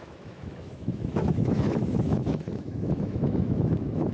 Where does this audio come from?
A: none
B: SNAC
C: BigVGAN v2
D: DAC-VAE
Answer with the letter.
D